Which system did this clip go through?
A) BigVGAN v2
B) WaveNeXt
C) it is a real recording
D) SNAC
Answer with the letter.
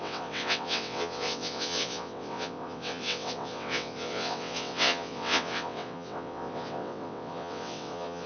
B